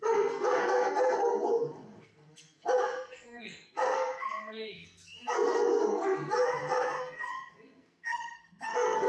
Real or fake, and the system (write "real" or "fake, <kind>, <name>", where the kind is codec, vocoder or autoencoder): fake, codec, SNAC